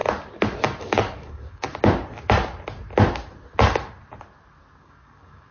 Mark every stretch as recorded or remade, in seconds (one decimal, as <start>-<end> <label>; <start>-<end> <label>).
0.0-0.8 recorded; 0.8-1.7 remade; 1.7-4.8 recorded; 4.8-5.5 remade

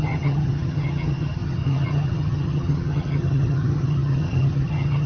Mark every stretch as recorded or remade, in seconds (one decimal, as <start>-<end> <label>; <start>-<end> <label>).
0.0-5.1 remade

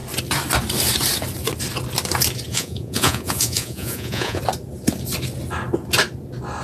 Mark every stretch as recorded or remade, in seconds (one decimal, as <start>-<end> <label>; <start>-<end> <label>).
0.0-2.5 recorded; 2.5-4.4 remade; 4.4-6.6 recorded